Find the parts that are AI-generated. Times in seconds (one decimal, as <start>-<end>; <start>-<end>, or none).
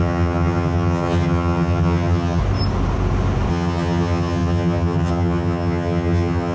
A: 0.0-2.4; 3.5-6.5